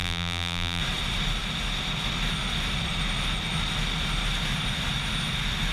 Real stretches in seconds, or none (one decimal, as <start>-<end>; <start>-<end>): 0.8-5.7